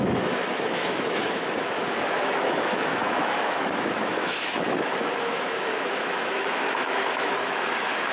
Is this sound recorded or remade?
remade